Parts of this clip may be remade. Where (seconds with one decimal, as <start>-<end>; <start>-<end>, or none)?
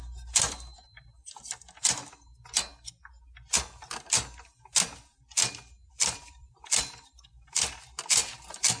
0.0-2.0; 5.9-8.8